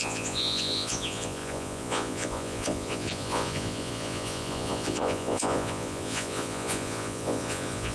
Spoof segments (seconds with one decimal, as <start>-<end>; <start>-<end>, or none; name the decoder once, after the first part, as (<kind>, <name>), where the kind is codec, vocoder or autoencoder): 0.0-7.9 (vocoder, Vocos)